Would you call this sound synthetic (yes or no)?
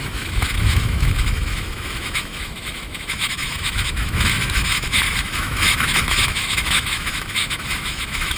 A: yes